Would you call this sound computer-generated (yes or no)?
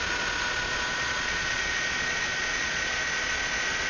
yes